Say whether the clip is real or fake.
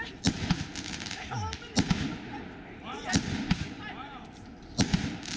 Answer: real